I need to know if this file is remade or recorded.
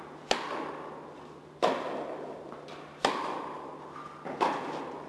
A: recorded